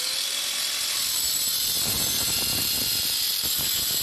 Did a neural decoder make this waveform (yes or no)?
no